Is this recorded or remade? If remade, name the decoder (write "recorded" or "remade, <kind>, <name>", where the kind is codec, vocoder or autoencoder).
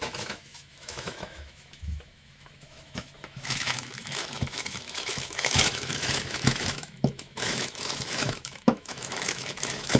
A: remade, autoencoder, DAC-VAE